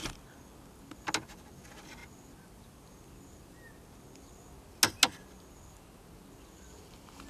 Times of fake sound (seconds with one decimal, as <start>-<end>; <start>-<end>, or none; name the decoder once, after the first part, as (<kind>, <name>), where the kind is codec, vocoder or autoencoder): none